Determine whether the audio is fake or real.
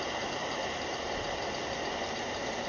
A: real